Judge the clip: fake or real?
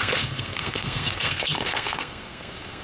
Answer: fake